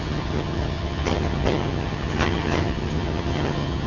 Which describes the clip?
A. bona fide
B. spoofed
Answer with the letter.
B